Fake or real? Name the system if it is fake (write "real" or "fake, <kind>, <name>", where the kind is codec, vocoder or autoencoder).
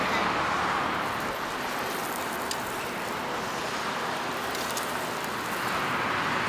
real